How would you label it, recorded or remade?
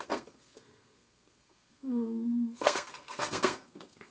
remade